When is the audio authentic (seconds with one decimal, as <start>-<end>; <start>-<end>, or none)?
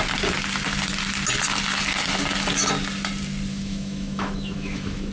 0.0-3.5